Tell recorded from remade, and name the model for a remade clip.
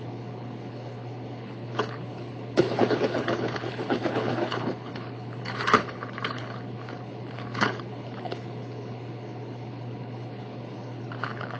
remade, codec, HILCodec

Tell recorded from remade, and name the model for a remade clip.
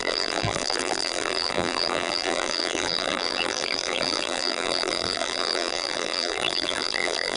remade, vocoder, BigVGAN v2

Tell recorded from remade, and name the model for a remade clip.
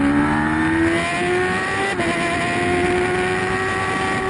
recorded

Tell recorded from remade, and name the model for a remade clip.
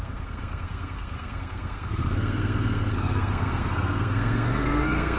remade, codec, SNAC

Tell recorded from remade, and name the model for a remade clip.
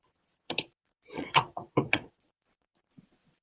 remade, vocoder, Vocos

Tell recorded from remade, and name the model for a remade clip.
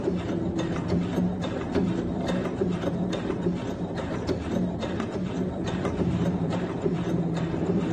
remade, vocoder, BigVGAN v2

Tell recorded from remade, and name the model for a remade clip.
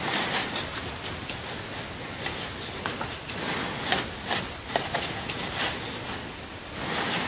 recorded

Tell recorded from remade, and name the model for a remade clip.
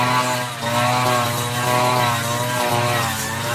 recorded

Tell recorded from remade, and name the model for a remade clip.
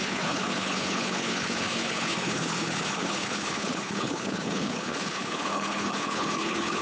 remade, codec, HILCodec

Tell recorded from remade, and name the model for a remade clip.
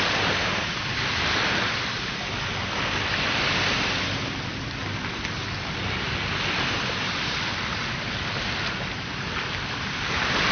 recorded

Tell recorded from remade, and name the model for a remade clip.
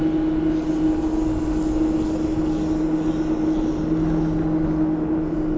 recorded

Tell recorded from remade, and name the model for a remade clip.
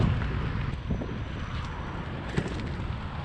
recorded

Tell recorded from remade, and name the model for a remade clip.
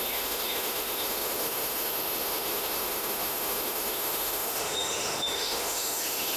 remade, autoencoder, DAC-VAE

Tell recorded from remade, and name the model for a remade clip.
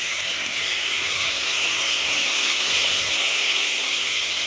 remade, codec, SNAC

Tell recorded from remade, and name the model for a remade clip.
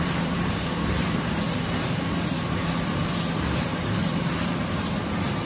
remade, vocoder, BigVGAN v2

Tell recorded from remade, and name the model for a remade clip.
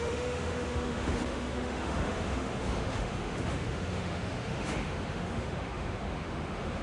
remade, autoencoder, DAC-VAE